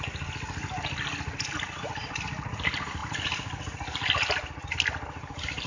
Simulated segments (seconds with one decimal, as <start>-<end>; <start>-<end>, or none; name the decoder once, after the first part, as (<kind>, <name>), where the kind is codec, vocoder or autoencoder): none

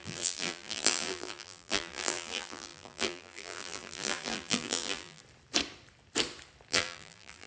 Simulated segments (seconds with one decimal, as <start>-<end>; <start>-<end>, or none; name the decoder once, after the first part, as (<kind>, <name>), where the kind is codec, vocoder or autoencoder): 0.0-5.2 (vocoder, BigVGAN v2); 6.7-7.5

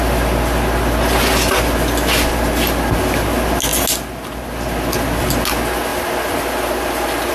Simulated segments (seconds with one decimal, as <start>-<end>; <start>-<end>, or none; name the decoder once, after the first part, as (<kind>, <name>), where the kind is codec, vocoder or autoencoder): 5.9-7.3 (vocoder, BigVGAN v2)

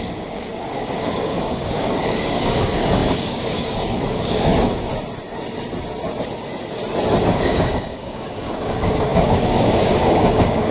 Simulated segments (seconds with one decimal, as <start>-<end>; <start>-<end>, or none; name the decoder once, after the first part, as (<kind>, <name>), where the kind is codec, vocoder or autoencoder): 0.0-4.9 (codec, DAC); 7.2-10.7

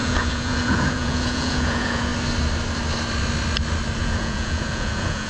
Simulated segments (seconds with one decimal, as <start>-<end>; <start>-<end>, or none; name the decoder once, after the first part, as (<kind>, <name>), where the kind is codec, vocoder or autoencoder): 0.0-2.1 (vocoder, Vocos); 4.0-5.3

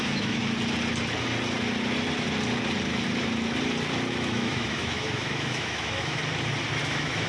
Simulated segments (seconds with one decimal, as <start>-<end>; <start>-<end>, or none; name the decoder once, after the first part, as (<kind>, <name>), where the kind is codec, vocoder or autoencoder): 0.0-0.4 (autoencoder, DAC-VAE); 4.1-6.2; 6.8-7.3

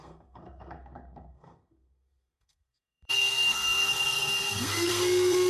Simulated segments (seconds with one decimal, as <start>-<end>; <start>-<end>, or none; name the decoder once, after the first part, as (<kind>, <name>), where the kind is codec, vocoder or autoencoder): 0.0-5.5 (codec, SNAC)